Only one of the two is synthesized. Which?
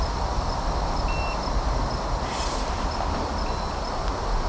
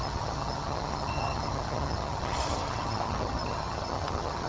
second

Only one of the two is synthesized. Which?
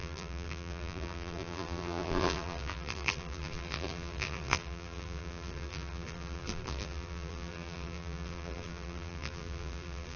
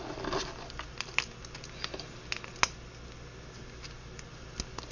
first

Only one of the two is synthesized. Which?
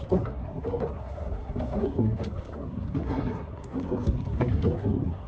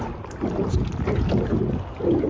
first